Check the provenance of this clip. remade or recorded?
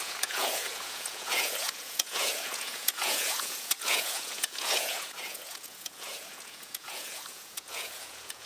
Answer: remade